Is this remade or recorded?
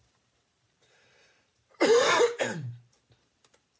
remade